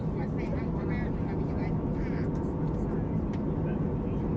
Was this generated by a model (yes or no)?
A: no